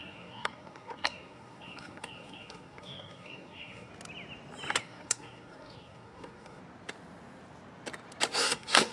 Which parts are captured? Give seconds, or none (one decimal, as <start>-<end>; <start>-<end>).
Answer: 3.9-4.8; 6.6-8.3